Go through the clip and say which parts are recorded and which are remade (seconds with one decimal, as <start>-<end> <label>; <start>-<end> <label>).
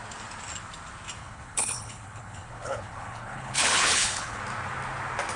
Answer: 0.0-1.2 recorded; 1.2-4.4 remade; 4.4-5.4 recorded